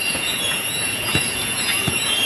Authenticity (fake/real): fake